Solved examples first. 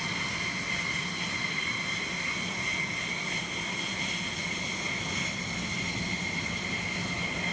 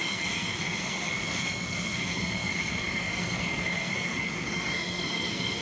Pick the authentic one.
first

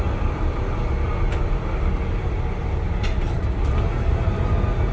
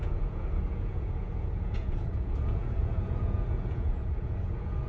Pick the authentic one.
first